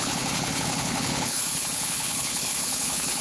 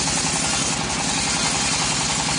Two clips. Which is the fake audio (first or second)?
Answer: first